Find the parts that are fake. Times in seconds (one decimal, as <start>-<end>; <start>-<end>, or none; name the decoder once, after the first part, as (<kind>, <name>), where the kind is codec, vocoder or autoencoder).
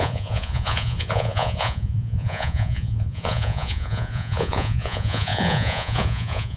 0.0-6.6 (vocoder, Vocos)